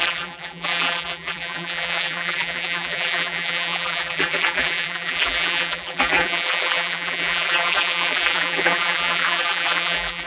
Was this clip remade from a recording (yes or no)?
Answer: yes